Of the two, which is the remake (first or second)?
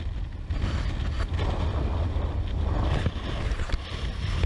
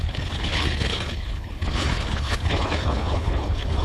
second